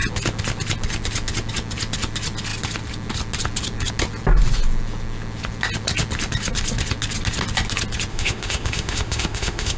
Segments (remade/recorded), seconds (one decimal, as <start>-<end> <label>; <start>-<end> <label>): 0.0-8.1 recorded; 8.1-9.8 remade